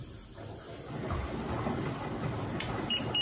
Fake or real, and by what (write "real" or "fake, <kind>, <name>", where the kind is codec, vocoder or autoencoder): real